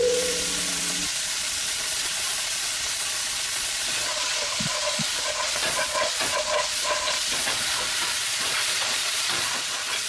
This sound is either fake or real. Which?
fake